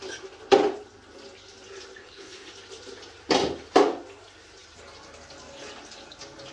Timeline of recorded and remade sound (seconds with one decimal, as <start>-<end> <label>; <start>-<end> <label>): 0.0-2.0 recorded; 2.0-2.5 remade; 2.5-6.5 recorded